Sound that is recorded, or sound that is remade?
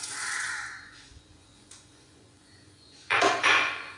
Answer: remade